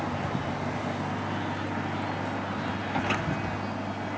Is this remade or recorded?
recorded